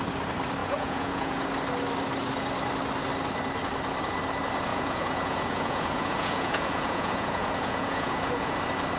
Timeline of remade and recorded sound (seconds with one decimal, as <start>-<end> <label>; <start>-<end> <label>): 0.0-0.6 recorded; 0.6-1.5 remade; 1.5-4.7 recorded; 4.7-8.6 remade; 8.6-9.0 recorded

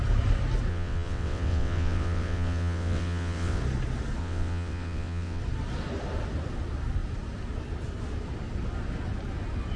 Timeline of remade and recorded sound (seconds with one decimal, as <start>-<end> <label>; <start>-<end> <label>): 0.0-0.7 recorded; 0.7-3.6 remade; 3.6-4.2 recorded; 4.2-5.4 remade; 5.4-9.8 recorded

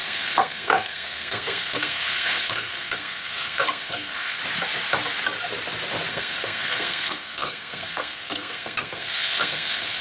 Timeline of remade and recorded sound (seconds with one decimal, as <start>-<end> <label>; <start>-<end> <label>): 0.0-4.4 remade; 4.4-6.1 recorded; 6.1-10.0 remade

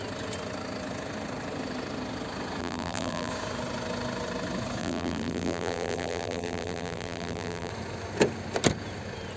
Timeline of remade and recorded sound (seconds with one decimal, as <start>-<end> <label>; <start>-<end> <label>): 0.0-2.6 recorded; 2.6-3.3 remade; 3.3-4.8 recorded; 4.8-7.7 remade; 7.7-9.4 recorded

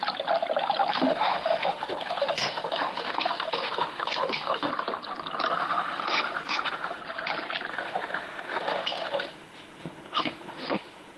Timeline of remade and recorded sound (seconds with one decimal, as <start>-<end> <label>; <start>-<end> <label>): 0.0-0.9 recorded; 0.9-4.7 remade; 4.7-5.5 recorded; 5.5-7.0 remade; 7.0-7.7 recorded; 7.7-11.2 remade